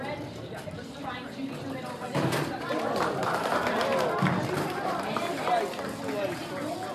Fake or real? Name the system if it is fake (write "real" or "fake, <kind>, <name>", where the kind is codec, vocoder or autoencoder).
real